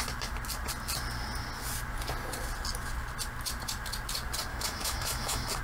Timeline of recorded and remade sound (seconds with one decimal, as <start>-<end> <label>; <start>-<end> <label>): 0.0-4.5 recorded; 4.5-5.6 remade